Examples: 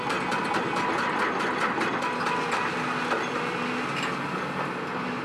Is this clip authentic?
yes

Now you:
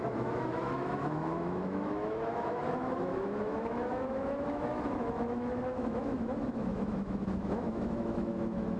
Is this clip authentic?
no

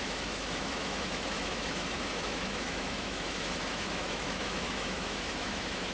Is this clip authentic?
no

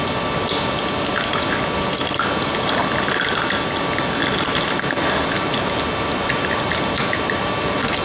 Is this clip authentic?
yes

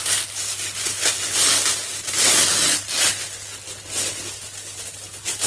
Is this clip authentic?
yes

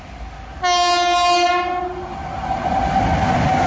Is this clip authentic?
yes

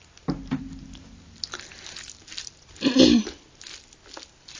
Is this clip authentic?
yes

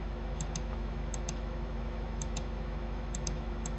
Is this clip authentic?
no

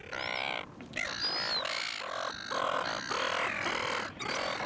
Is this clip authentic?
yes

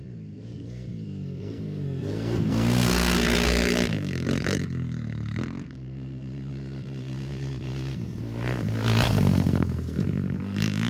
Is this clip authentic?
no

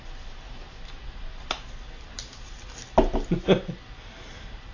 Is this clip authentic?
yes